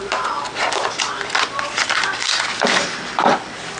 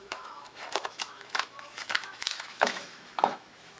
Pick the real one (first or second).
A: first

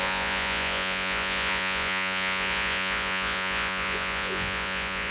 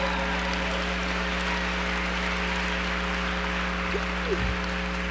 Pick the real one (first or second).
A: second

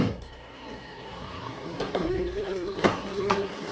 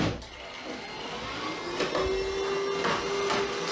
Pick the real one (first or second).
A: second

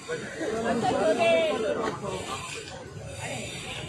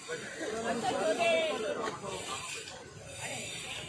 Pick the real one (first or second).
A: first